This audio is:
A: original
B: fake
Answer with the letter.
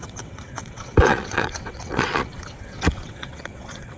B